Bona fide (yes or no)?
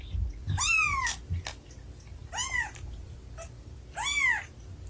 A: yes